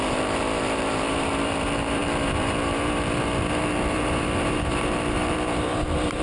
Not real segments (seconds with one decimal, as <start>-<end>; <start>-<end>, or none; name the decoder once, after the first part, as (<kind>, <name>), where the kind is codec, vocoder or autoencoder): 0.0-6.2 (vocoder, BigVGAN v2)